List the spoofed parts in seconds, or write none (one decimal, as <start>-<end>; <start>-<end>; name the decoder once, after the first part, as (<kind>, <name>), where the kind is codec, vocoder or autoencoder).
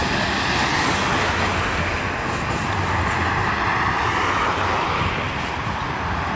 3.4-6.4 (vocoder, BigVGAN v2)